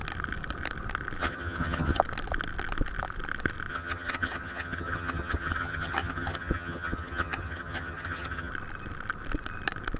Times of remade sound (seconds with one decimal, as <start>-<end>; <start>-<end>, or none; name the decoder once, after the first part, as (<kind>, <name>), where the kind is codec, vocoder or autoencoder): 1.2-2.0 (vocoder, HiFi-GAN); 3.7-8.5